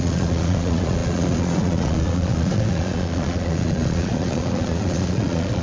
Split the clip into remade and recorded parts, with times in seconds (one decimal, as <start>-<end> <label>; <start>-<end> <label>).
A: 0.0-5.6 remade